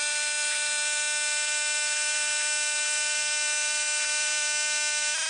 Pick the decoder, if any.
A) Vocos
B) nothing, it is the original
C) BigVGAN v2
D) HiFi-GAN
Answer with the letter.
B